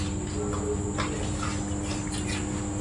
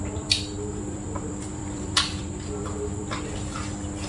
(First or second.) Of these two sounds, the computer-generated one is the second